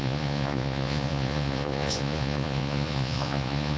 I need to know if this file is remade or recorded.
remade